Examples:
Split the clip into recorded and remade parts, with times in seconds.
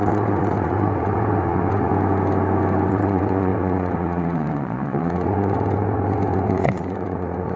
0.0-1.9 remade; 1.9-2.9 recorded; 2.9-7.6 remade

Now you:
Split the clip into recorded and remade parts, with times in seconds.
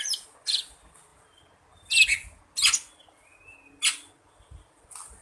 0.0-5.2 recorded